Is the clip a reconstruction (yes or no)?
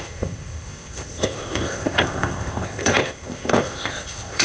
yes